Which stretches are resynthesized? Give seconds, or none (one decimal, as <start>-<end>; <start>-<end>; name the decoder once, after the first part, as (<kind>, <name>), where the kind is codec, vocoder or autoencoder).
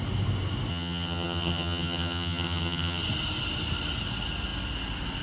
0.7-3.0 (vocoder, HiFi-GAN)